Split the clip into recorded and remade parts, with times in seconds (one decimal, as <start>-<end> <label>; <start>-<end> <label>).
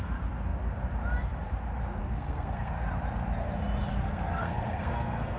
0.0-2.0 recorded; 2.0-2.7 remade; 2.7-3.9 recorded; 3.9-5.4 remade